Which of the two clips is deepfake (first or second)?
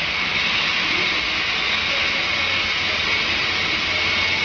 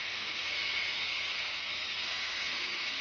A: second